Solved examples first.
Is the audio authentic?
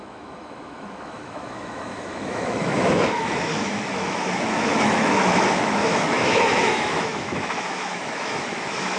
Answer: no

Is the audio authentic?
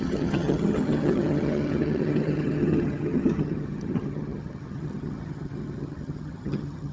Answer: no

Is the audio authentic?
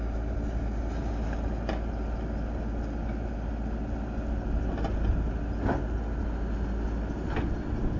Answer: yes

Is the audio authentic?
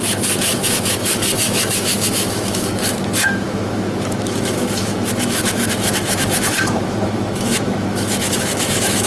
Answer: no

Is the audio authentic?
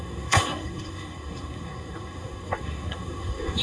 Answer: no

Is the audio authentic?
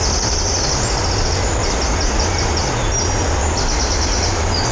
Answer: yes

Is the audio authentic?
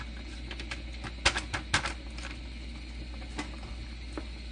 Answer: yes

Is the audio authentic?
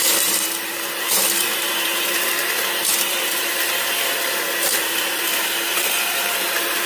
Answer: no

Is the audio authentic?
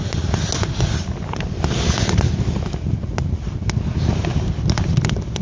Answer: yes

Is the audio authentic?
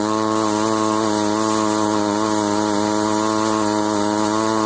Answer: yes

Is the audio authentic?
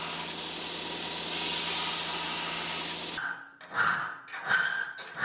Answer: yes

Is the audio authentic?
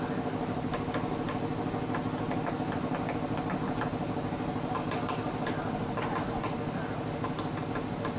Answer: yes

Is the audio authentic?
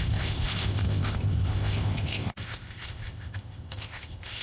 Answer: no